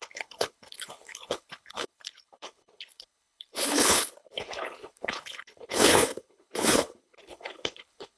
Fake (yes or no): yes